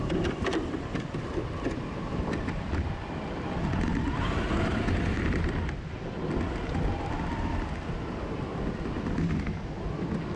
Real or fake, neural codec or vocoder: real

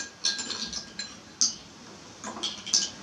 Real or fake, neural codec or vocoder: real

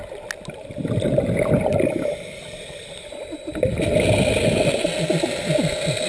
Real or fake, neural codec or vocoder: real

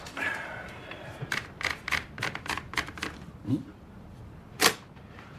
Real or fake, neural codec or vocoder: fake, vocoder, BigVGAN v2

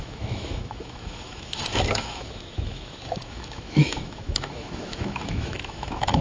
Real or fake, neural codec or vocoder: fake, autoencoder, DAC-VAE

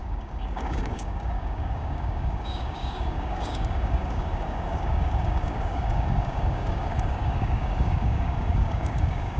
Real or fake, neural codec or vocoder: fake, codec, DAC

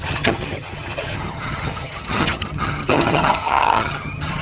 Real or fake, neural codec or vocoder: fake, vocoder, HiFi-GAN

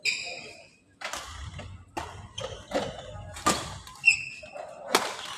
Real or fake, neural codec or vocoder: real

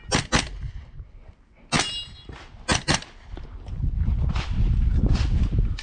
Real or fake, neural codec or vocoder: real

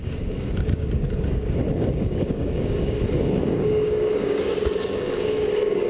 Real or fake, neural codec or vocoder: fake, codec, DAC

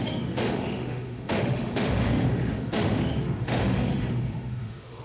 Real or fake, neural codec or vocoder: fake, autoencoder, DAC-VAE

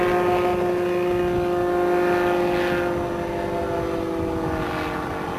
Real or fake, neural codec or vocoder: real